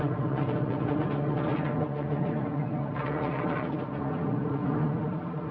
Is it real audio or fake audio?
fake